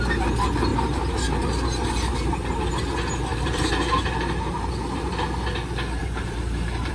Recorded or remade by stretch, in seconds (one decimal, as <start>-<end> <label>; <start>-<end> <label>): 0.0-0.7 recorded; 0.7-2.7 remade; 2.7-3.3 recorded; 3.3-4.7 remade; 4.7-6.0 recorded; 6.0-6.9 remade

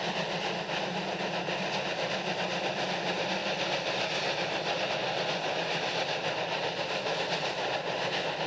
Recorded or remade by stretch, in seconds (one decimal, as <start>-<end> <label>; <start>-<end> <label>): 0.0-8.5 recorded

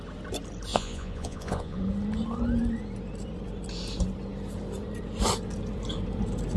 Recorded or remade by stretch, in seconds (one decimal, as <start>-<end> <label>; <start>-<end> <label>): 0.0-0.7 recorded; 0.7-1.8 remade; 1.8-6.6 recorded

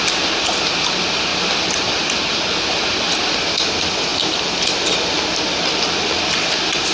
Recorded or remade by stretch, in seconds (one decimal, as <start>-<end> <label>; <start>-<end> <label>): 0.0-1.3 recorded; 1.3-1.9 remade; 1.9-4.1 recorded; 4.1-5.9 remade; 5.9-6.9 recorded